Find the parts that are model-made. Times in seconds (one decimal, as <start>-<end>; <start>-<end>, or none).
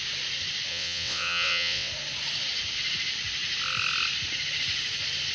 0.7-1.9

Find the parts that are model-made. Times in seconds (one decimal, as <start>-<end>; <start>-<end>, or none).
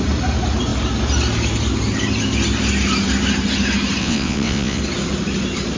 4.0-4.8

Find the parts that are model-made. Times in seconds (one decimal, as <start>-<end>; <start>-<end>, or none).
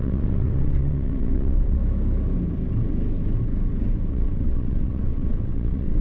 0.0-1.8; 4.1-6.0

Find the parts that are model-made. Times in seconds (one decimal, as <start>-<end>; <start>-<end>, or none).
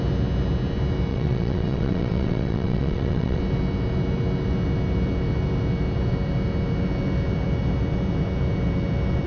1.1-3.4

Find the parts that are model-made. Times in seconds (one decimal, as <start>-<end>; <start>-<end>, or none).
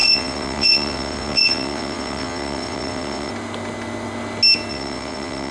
0.0-3.3; 4.7-5.5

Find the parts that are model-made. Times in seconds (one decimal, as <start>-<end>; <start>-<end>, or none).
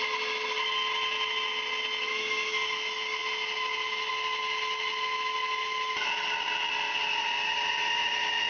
none